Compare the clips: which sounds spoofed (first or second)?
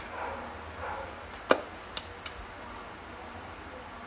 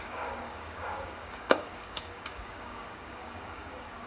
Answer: second